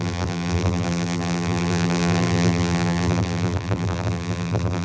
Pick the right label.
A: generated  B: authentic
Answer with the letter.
A